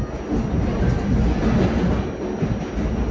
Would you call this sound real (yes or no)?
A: yes